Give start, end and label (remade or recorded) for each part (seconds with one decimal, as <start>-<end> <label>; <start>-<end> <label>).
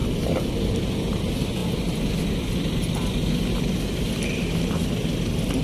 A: 0.0-0.7 remade; 0.7-1.6 recorded; 1.6-2.2 remade; 2.2-5.6 recorded